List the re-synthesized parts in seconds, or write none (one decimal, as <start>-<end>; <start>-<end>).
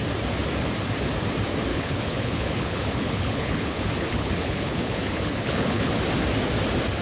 1.7-5.9